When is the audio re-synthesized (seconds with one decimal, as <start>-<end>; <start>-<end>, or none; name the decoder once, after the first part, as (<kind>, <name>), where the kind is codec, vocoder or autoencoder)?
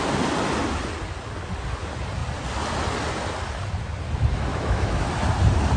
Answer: 4.5-5.1 (autoencoder, DAC-VAE)